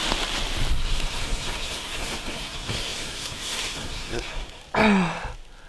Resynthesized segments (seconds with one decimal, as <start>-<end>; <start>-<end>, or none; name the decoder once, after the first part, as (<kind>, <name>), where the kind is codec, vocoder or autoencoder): 0.7-4.6 (codec, SNAC)

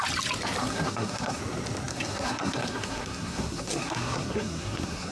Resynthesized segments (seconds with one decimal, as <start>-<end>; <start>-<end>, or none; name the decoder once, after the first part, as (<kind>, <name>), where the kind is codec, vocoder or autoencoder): 0.6-1.4 (codec, SNAC); 1.9-5.1

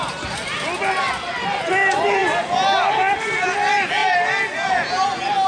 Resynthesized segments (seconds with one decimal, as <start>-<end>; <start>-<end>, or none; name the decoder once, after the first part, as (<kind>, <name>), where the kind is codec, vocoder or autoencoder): none

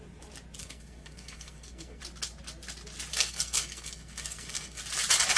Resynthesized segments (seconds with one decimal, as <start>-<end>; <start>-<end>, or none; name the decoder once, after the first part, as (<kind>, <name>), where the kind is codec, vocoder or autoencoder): 0.6-2.0 (codec, SNAC); 3.1-4.8

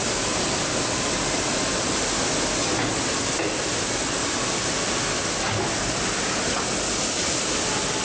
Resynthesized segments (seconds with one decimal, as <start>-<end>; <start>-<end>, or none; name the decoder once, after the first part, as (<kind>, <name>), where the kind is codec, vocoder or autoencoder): none

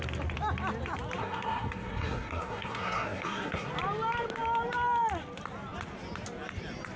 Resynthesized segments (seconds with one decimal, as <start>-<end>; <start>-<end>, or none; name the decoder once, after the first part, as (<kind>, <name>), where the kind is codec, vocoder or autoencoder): 1.2-3.7 (codec, SNAC)

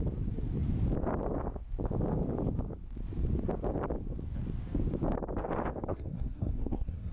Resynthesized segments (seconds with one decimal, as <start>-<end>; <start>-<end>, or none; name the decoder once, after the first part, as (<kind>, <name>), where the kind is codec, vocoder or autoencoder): 5.9-7.1 (codec, SNAC)